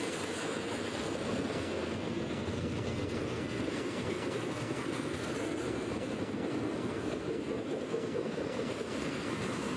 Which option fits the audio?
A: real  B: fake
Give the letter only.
B